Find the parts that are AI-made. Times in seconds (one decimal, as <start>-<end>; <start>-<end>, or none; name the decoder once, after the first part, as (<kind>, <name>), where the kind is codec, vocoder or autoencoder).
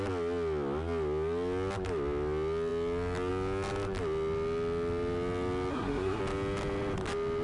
5.7-6.2 (codec, SNAC)